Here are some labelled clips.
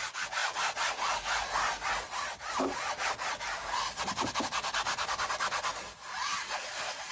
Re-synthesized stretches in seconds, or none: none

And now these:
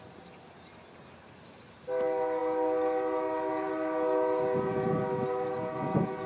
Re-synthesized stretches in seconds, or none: none

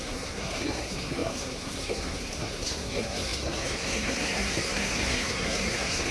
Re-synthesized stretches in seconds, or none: 0.0-6.1 (codec, SNAC)

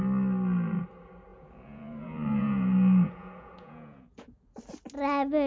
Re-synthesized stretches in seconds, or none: 1.3-4.6 (vocoder, Vocos)

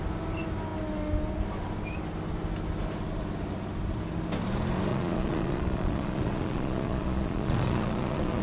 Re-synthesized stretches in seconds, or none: 4.9-8.4 (vocoder, Vocos)